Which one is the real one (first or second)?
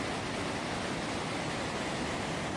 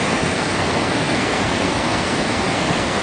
first